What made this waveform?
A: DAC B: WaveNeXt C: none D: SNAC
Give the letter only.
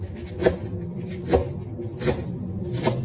C